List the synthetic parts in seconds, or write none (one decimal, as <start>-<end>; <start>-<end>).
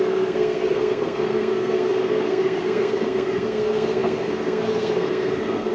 0.0-5.7